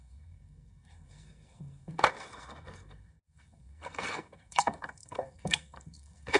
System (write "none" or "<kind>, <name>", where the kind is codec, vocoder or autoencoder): codec, SNAC